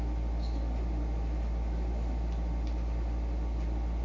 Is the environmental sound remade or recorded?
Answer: recorded